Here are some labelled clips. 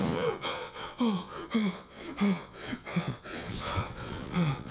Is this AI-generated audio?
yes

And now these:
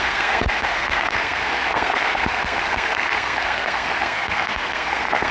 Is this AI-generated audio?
yes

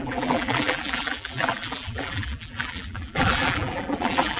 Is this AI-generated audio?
yes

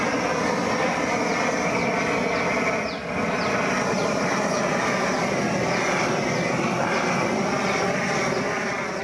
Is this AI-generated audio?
no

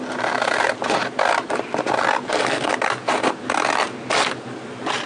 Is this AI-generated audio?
no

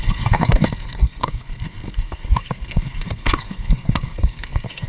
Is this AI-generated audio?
yes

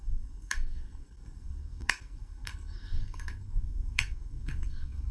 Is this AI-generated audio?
yes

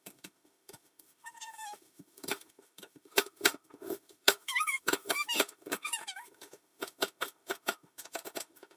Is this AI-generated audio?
yes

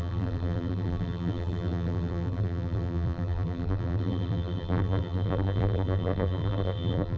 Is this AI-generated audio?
yes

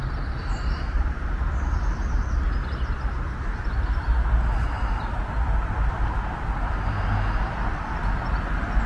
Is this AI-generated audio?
no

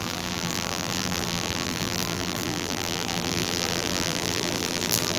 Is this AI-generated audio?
yes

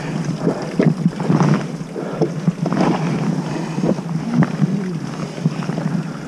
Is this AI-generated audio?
no